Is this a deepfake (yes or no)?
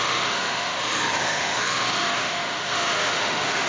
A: yes